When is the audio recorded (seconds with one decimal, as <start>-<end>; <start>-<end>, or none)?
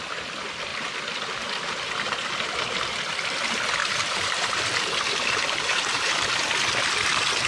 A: 0.0-3.8; 6.3-7.5